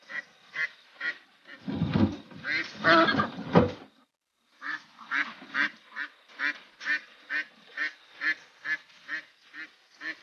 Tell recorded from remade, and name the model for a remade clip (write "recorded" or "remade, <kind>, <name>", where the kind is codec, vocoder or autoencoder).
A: recorded